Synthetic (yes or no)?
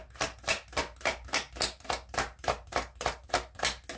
no